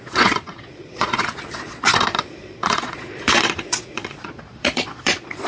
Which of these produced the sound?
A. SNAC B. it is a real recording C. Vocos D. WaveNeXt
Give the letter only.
C